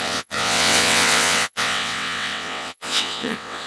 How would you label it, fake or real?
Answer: fake